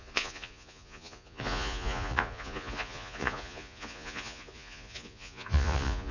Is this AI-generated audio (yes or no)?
yes